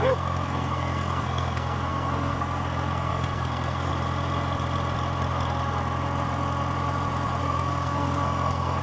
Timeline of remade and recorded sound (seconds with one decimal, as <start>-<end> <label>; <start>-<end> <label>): 0.0-3.9 remade; 3.9-7.4 recorded; 7.4-8.8 remade